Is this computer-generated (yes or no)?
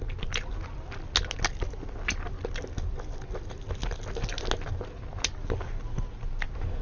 no